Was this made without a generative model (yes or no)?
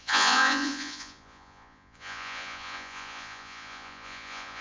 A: no